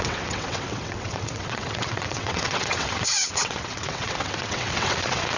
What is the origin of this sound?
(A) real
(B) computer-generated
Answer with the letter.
B